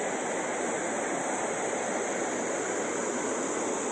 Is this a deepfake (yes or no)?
no